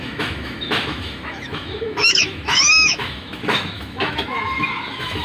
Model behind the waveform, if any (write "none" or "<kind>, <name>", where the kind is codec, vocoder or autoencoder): autoencoder, DAC-VAE